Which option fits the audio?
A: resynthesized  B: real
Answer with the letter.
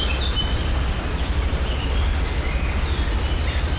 B